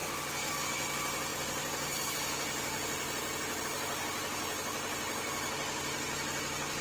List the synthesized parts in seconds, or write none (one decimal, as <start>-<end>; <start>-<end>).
1.3-3.6